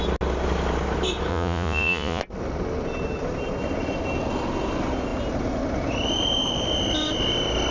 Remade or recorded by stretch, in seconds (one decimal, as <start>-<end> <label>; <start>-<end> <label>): 0.0-1.3 recorded; 1.3-2.2 remade; 2.2-7.7 recorded

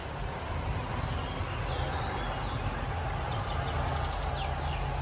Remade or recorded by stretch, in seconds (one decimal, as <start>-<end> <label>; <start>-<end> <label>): 0.0-5.0 recorded

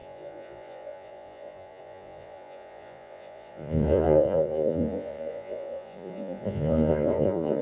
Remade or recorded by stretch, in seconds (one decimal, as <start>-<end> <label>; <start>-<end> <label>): 0.0-7.6 remade